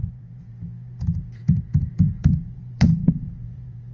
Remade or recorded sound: remade